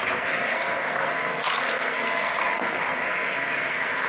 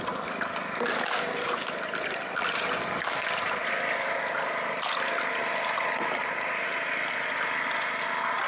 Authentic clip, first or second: second